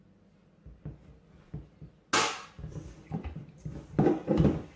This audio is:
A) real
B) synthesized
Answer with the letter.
A